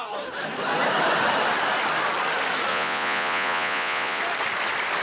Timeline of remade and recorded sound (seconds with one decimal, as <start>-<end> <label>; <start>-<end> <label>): 0.0-2.7 recorded; 2.7-4.2 remade; 4.2-5.0 recorded